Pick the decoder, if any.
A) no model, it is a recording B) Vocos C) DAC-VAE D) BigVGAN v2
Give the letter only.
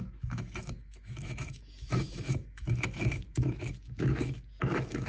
C